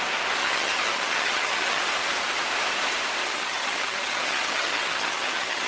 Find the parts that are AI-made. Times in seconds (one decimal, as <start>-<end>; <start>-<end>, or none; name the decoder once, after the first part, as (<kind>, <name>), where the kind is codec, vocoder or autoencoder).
0.4-1.8 (vocoder, HiFi-GAN); 3.2-5.7